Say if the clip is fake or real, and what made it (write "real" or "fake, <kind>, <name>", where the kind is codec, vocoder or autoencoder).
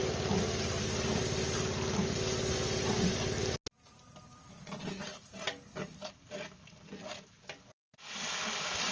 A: real